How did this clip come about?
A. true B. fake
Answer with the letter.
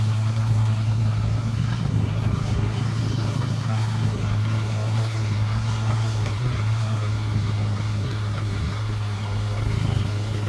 B